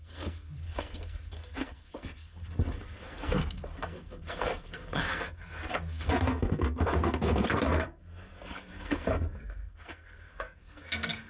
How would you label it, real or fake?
fake